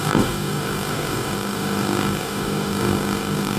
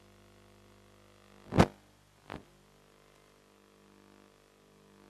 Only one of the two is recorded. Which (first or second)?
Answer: second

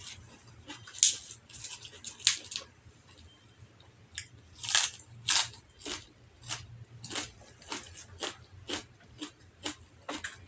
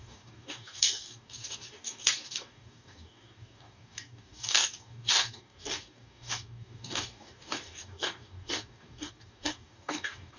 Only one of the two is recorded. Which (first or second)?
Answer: first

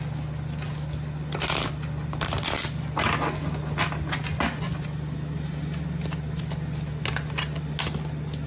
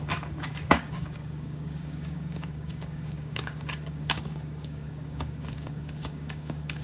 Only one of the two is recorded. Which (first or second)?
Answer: first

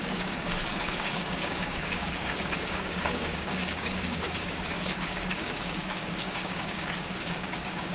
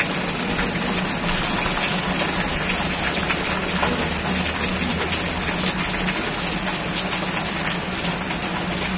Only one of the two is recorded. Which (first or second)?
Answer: second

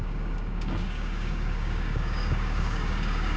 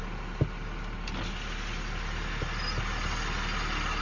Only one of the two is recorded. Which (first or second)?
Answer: second